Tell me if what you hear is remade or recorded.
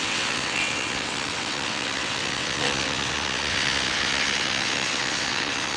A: remade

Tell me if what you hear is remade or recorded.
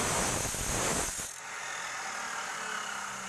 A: recorded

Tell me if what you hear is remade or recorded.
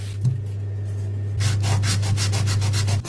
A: recorded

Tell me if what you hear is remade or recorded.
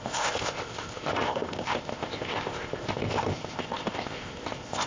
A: remade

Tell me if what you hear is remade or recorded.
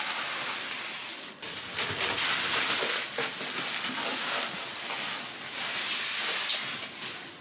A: recorded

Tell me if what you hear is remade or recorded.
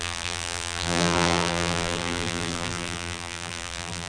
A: remade